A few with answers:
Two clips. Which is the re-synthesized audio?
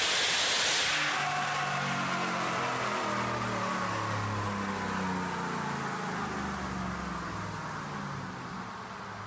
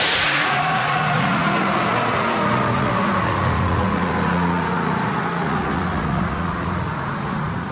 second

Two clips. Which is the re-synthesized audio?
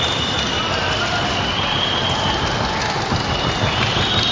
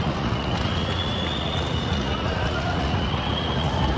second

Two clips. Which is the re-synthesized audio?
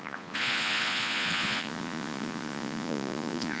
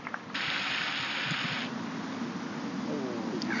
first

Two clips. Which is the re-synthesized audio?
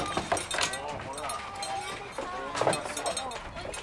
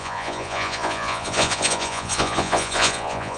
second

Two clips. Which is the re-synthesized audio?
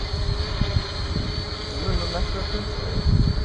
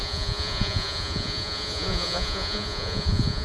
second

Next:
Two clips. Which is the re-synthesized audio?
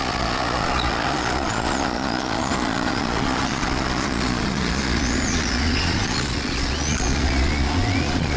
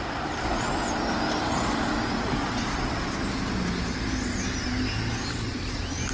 first